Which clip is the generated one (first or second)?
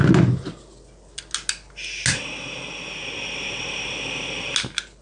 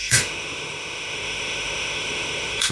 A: second